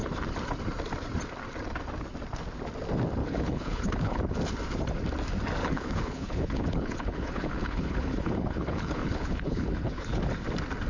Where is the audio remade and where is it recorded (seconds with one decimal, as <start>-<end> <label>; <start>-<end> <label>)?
0.0-3.2 recorded; 3.2-4.2 remade; 4.2-5.6 recorded; 5.6-10.2 remade; 10.2-10.9 recorded